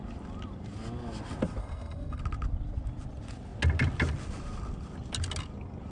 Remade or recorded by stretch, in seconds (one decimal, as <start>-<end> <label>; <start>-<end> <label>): 0.0-1.6 recorded; 1.6-2.2 remade; 2.2-5.9 recorded